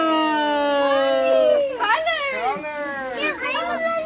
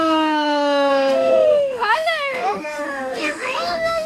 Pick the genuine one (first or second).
first